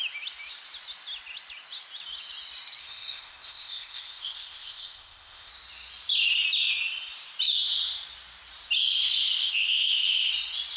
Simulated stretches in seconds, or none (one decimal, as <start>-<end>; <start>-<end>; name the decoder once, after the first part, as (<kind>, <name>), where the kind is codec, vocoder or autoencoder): 2.8-5.5 (codec, ZipCodec); 9.4-10.3